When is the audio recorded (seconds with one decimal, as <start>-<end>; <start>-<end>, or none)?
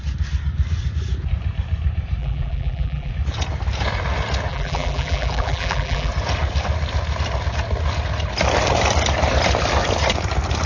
0.0-2.2; 3.1-4.5; 6.1-10.7